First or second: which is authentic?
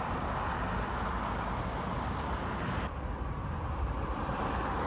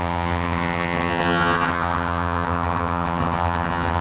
first